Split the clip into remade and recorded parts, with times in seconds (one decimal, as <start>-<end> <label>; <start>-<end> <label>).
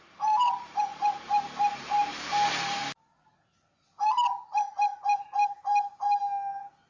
0.0-2.8 remade; 2.8-4.0 recorded; 4.0-5.7 remade; 5.7-6.9 recorded